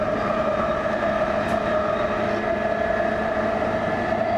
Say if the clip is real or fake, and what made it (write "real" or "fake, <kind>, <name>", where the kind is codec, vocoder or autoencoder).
real